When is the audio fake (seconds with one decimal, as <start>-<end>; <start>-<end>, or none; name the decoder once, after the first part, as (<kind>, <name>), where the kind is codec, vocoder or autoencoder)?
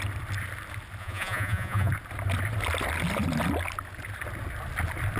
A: 1.0-1.9 (vocoder, Vocos)